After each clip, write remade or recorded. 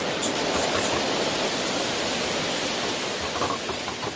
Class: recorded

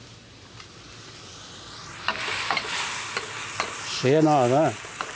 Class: recorded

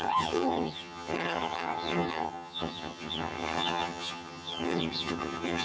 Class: remade